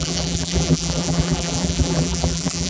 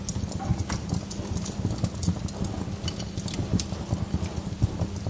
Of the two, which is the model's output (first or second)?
first